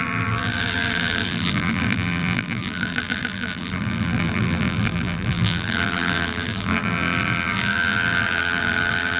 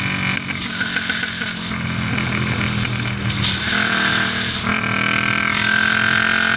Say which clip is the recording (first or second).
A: second